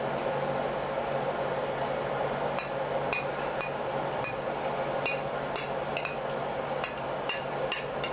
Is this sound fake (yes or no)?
no